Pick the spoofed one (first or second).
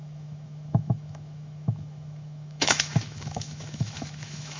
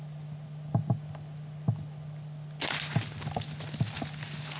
first